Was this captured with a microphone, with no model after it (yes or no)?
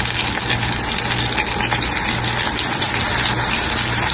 yes